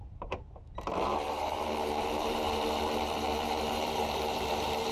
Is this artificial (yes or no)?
yes